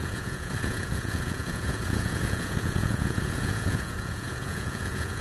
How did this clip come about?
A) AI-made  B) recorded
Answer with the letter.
A